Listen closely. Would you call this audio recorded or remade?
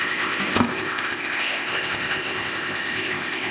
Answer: remade